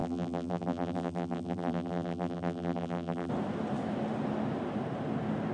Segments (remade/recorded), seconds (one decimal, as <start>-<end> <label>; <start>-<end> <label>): 0.0-3.3 remade; 3.3-5.5 recorded